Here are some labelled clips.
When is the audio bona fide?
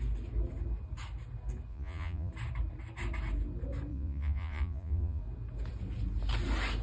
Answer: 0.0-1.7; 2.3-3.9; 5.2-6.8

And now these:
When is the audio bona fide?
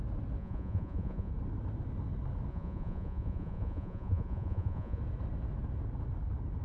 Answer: 0.0-0.4; 1.3-2.5; 5.0-6.6